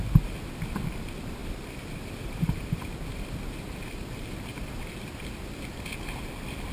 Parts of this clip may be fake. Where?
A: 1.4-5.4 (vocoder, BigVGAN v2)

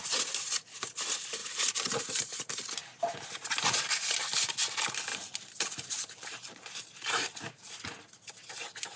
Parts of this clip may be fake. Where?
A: 1.4-2.4 (vocoder, BigVGAN v2); 5.1-7.6

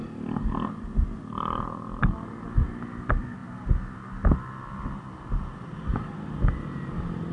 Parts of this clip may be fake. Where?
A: none

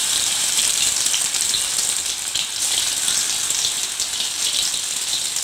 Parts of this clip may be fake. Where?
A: 0.0-0.8 (vocoder, BigVGAN v2)